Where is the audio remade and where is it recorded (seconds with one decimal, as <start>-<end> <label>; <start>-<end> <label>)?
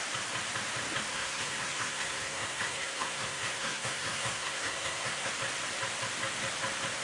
0.0-1.1 recorded; 1.1-5.3 remade; 5.3-7.0 recorded